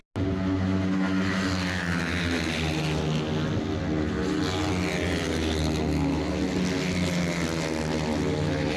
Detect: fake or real real